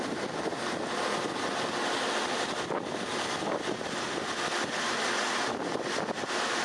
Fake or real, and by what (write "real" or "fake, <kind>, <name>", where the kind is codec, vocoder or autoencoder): real